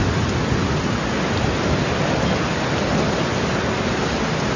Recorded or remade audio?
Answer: recorded